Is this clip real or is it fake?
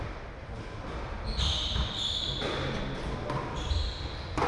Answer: real